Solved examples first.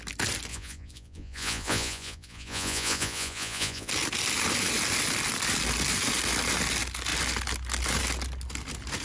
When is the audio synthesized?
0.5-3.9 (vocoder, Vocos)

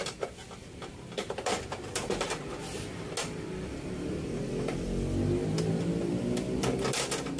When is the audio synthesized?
0.6-3.1 (vocoder, BigVGAN v2)

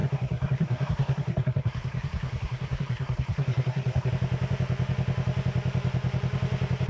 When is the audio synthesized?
0.0-4.1 (codec, SNAC)

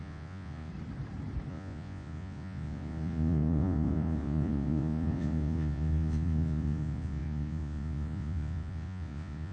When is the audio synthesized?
0.0-0.7 (vocoder, Vocos); 1.5-9.5

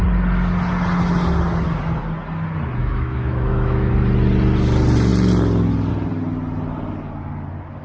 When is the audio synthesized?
2.8-3.9 (autoencoder, DAC-VAE)